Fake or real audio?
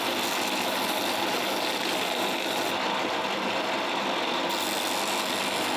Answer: real